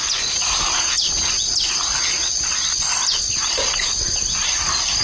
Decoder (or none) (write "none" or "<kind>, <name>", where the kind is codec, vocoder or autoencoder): none